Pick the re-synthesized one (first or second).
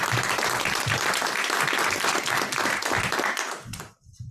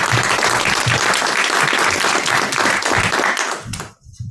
first